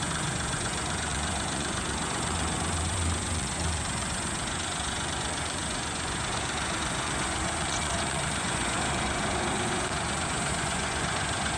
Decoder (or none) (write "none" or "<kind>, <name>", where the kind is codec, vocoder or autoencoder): vocoder, Vocos